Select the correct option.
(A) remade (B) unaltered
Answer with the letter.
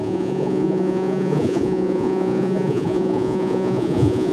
A